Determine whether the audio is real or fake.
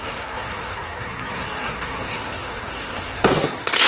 fake